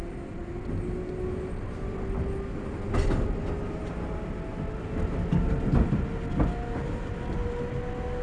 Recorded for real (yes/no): yes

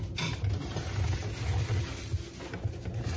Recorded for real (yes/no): yes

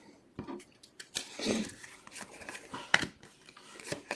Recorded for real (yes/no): no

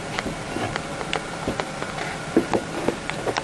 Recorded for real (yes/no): yes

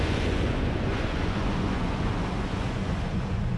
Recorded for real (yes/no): no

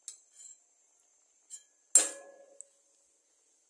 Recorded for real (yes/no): yes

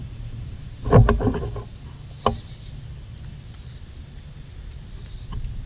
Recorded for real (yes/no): yes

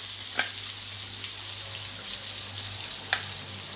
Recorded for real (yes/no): yes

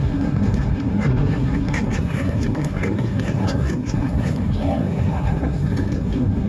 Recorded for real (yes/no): no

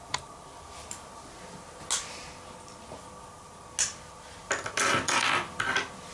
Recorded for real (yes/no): yes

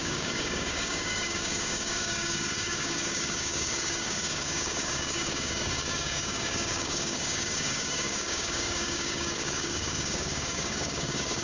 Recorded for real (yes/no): no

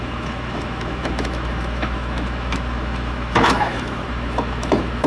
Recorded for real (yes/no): no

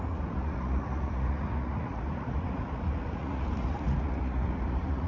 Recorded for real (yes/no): no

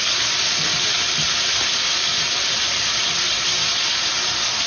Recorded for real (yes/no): yes